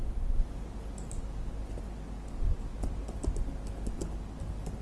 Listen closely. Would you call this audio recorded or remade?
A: recorded